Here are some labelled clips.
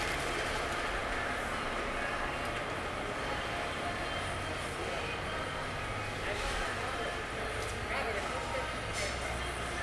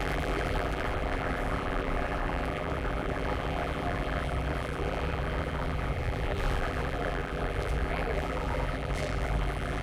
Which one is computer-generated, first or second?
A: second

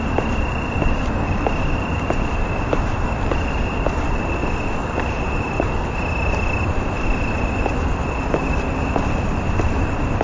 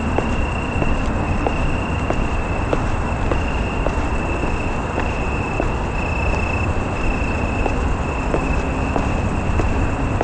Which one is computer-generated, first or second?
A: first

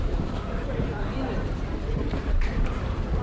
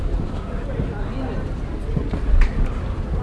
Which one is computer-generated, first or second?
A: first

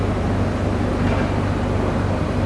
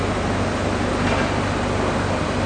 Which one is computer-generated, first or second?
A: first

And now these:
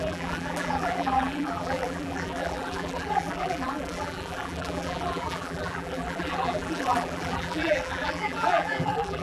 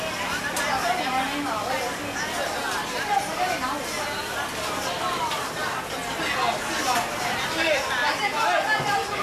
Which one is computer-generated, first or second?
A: first